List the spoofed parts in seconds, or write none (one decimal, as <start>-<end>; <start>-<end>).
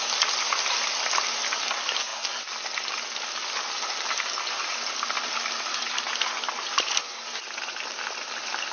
none